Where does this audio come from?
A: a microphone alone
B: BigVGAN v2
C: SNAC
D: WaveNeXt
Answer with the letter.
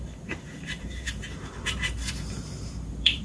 B